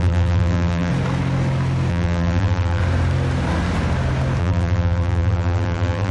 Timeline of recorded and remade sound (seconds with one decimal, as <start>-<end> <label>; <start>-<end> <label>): 0.0-0.9 remade; 0.9-1.9 recorded; 1.9-2.8 remade; 2.8-4.4 recorded; 4.4-6.1 remade